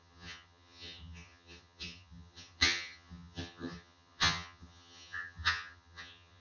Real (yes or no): no